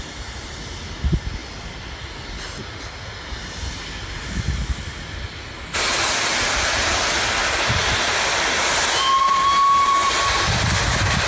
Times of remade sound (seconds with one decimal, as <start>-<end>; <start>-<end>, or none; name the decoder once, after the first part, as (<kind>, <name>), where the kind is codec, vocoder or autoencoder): none